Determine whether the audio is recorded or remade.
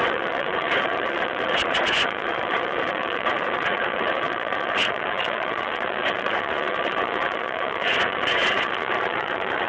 remade